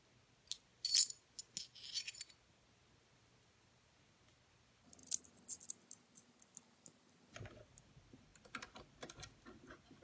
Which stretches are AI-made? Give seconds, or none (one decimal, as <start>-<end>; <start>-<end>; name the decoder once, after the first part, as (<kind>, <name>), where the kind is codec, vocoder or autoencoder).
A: none